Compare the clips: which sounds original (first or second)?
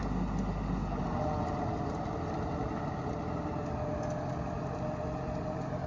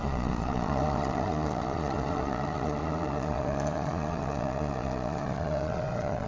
first